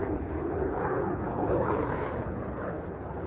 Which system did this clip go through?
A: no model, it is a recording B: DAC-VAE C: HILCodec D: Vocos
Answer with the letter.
C